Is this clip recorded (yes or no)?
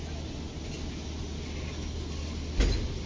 yes